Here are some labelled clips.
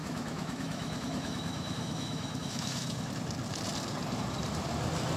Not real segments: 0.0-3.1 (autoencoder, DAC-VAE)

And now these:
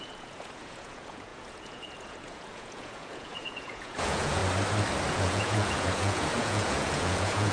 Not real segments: 0.0-4.4 (vocoder, Vocos); 5.1-7.5

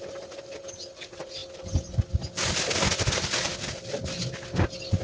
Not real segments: none

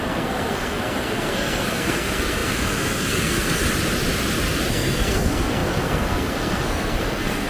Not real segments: 0.0-3.6 (codec, SNAC); 4.7-7.5

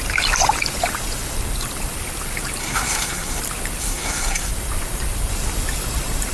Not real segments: 2.6-3.4 (codec, SNAC); 3.8-4.5

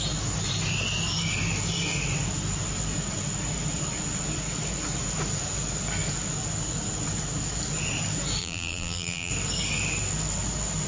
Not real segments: 8.4-9.3 (vocoder, BigVGAN v2)

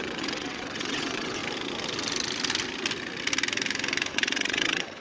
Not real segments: 0.0-1.4 (vocoder, WaveNeXt); 4.1-5.0